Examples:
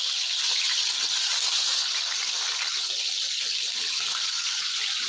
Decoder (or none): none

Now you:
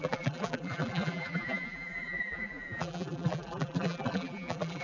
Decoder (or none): vocoder, BigVGAN v2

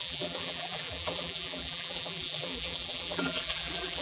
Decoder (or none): vocoder, BigVGAN v2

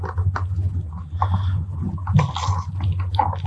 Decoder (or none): none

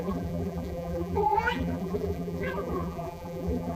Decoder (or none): vocoder, BigVGAN v2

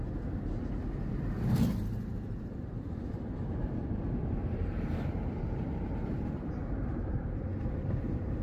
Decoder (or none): vocoder, BigVGAN v2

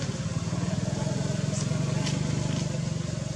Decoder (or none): none